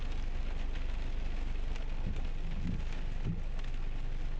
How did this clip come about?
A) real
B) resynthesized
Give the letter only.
A